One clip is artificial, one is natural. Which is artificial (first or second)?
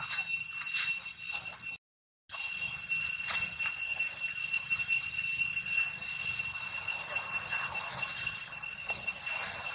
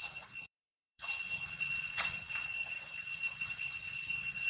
second